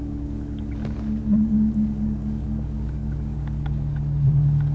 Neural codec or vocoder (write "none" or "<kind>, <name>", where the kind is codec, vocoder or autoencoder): codec, DAC